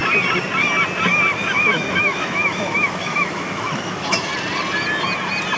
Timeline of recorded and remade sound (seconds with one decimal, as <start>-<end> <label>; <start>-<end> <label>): 0.0-1.7 recorded; 1.7-4.3 remade; 4.3-5.6 recorded